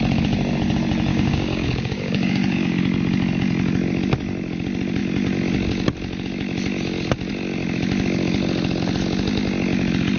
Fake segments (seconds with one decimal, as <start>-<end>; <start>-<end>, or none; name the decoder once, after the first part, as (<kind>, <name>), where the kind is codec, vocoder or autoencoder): 1.1-2.8 (codec, DAC)